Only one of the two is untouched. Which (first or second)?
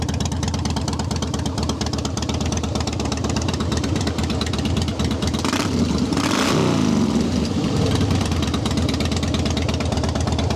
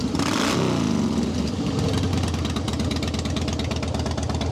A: second